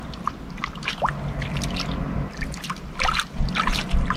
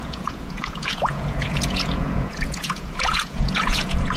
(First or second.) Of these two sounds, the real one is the first